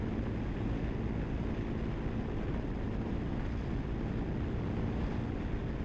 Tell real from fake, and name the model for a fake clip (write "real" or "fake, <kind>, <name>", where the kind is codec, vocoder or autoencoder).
real